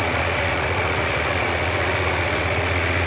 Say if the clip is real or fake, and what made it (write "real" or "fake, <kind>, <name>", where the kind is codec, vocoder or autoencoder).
fake, vocoder, Vocos